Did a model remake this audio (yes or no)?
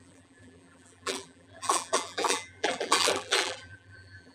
yes